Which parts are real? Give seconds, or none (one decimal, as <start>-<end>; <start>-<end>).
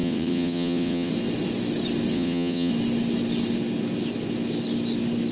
1.1-2.1; 2.7-5.3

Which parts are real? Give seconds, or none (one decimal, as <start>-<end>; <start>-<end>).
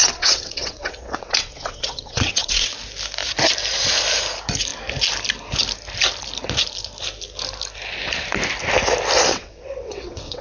2.7-9.3